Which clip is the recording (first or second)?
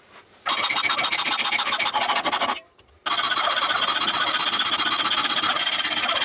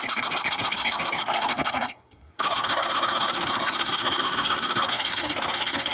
first